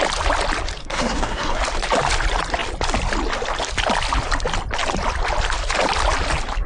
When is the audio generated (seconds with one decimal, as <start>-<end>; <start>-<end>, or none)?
0.8-1.6